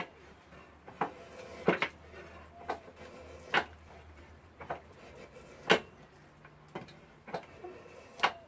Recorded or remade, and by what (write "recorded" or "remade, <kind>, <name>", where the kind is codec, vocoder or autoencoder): recorded